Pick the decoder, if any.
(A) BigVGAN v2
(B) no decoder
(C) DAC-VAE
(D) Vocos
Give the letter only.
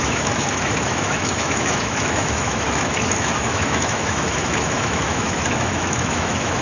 C